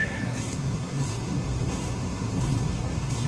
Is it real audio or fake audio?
fake